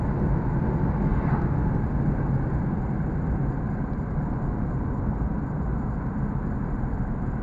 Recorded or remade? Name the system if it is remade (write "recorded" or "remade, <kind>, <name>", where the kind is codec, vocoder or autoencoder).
recorded